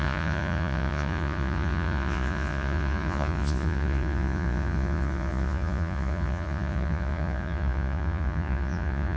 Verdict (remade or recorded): remade